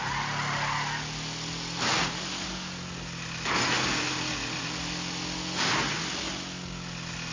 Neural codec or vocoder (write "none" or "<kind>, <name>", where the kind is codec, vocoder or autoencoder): none